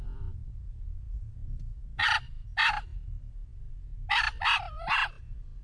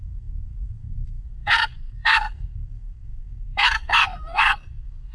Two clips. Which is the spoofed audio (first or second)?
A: second